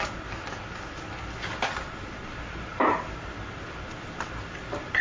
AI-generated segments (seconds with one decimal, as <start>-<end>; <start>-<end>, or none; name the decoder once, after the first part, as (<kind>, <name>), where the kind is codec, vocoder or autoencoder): 2.7-3.3 (vocoder, BigVGAN v2)